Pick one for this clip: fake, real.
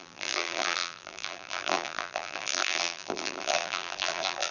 fake